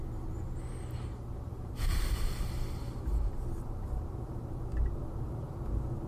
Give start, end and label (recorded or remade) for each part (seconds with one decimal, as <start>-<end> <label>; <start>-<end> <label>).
0.0-6.1 remade